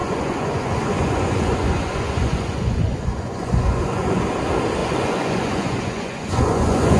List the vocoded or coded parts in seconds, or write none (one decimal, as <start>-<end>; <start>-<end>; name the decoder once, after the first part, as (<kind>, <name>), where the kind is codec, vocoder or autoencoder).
0.0-4.2 (vocoder, Vocos); 4.8-7.0